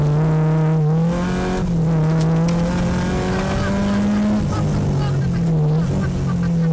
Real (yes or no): yes